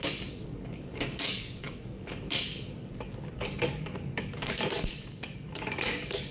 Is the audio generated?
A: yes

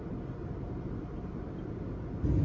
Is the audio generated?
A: no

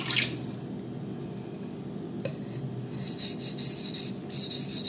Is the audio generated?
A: no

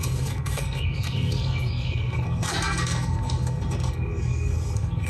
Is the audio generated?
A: yes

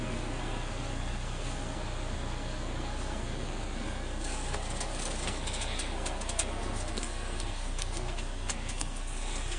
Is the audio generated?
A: yes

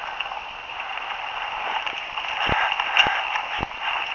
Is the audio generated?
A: no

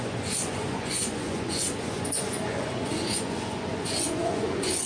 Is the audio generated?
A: yes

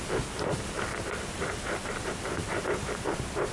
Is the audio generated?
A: no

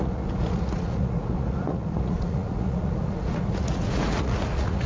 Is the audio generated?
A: yes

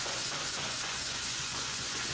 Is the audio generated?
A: yes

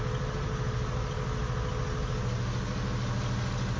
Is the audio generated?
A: no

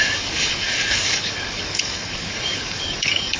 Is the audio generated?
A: yes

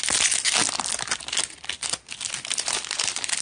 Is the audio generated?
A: no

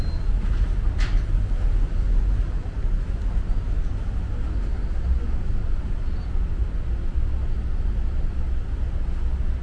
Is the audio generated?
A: no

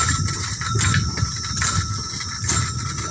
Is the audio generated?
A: yes